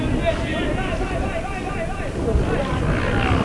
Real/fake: real